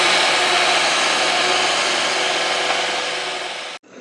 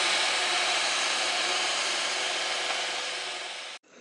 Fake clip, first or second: second